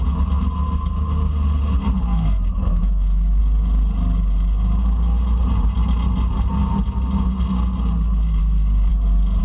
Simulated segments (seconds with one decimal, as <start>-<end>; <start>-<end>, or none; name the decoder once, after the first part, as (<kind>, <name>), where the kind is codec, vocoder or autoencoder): 2.1-3.4 (autoencoder, DAC-VAE)